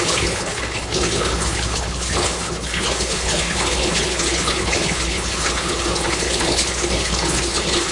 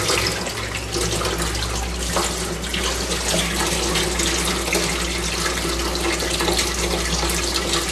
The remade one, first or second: first